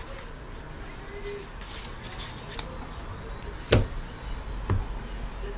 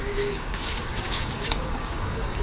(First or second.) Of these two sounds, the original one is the first